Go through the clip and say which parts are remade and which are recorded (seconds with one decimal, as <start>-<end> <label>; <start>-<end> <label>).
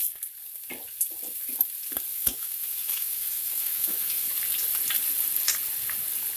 0.0-2.1 recorded; 2.1-4.3 remade; 4.3-6.4 recorded